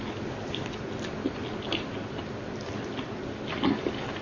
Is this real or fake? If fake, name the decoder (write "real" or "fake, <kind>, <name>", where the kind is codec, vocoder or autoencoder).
real